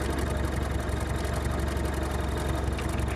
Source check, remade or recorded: recorded